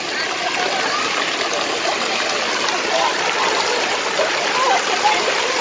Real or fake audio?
real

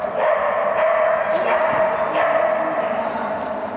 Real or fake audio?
real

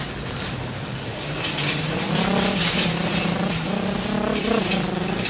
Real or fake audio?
real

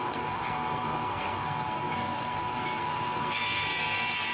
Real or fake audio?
fake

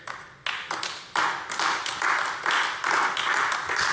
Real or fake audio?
real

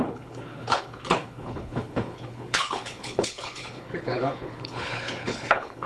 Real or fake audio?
fake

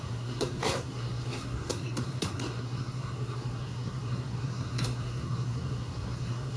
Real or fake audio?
fake